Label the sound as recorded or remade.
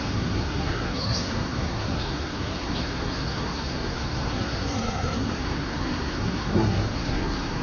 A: remade